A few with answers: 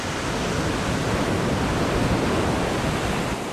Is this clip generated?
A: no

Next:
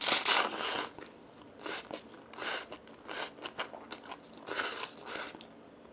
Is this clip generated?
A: no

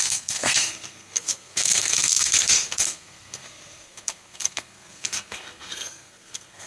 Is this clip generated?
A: yes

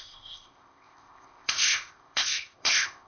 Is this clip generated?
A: yes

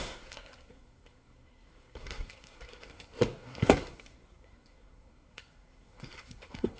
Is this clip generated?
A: yes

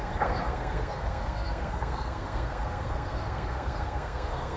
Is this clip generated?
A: yes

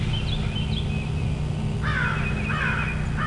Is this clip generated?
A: no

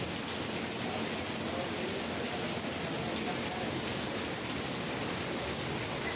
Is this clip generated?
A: no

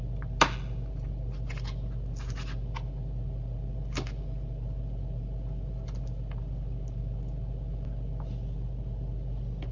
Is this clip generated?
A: no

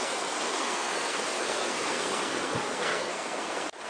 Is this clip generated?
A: yes